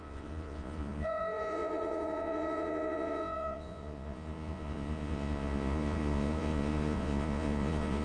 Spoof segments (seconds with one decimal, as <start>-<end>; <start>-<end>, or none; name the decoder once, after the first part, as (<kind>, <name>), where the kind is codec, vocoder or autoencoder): 0.0-8.0 (vocoder, Vocos)